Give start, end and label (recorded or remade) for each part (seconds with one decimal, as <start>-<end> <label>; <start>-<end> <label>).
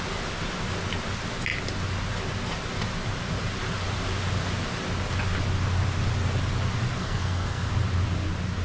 0.0-7.0 recorded; 7.0-7.7 remade; 7.7-8.6 recorded